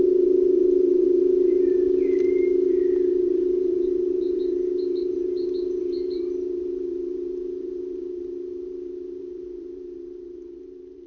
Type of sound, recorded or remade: remade